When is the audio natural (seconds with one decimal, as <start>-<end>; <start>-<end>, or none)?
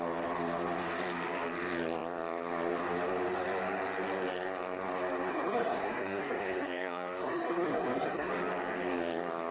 0.0-5.3; 8.3-9.5